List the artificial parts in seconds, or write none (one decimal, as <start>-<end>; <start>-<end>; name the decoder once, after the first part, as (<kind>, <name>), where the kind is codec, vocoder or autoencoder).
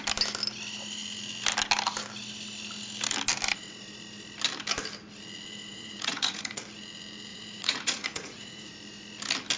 5.7-6.6 (vocoder, Vocos); 7.3-8.7